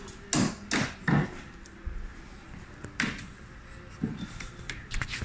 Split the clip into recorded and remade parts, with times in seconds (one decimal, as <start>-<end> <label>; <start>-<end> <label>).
0.0-2.1 recorded; 2.1-5.2 remade